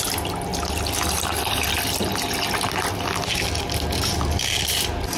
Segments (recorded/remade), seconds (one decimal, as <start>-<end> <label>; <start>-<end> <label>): 0.0-5.2 recorded